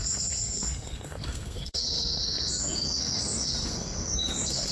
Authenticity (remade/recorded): remade